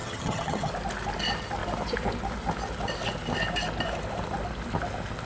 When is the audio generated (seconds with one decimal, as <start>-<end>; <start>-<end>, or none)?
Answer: 0.0-0.7